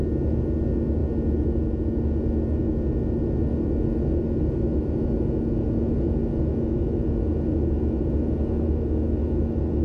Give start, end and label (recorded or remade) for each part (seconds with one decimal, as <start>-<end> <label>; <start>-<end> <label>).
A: 0.0-9.8 recorded